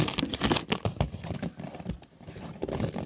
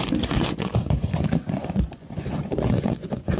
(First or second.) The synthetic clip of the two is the second